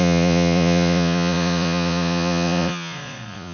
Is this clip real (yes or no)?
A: no